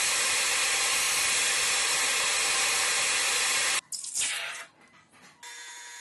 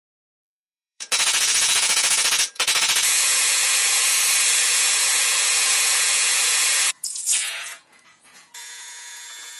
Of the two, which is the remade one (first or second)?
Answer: second